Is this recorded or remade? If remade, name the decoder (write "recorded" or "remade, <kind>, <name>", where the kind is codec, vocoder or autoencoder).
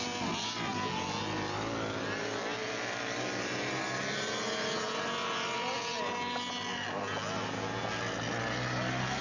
recorded